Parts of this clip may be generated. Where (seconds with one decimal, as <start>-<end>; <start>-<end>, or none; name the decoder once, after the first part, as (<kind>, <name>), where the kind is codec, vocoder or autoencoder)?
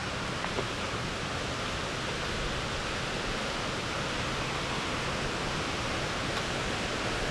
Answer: 0.0-1.3 (vocoder, BigVGAN v2)